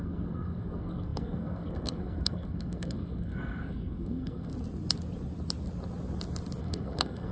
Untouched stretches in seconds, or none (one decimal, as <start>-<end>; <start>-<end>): 4.5-6.6